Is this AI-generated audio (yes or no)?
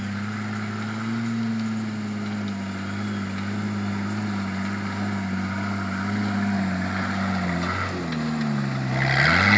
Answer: no